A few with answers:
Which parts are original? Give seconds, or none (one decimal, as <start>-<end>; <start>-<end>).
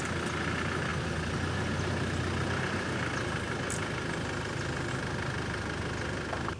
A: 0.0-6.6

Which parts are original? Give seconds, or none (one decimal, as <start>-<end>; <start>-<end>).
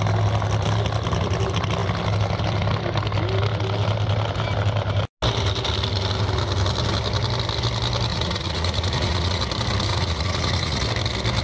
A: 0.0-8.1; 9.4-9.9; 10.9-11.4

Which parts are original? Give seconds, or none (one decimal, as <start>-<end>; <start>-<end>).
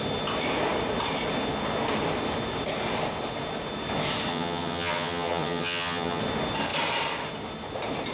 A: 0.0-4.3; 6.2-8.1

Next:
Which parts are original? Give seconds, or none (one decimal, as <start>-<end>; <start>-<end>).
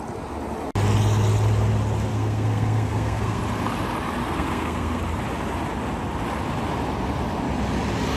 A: 0.0-2.1; 3.4-4.2; 5.0-8.2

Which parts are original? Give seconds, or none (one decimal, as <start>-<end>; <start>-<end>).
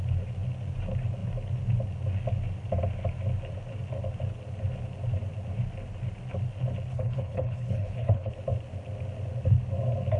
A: 0.0-6.9; 8.3-10.2